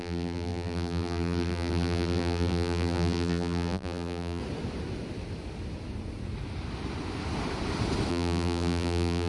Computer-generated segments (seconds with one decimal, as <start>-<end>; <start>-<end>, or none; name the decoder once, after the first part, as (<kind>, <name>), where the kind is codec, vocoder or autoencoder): 0.0-4.4 (vocoder, BigVGAN v2); 8.1-9.3